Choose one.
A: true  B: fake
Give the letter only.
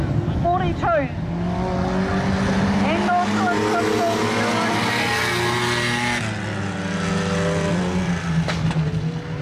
A